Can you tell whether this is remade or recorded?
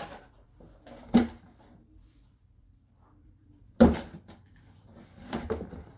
remade